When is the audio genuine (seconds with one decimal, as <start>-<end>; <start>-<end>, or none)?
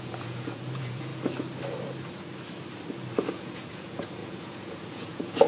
1.1-3.3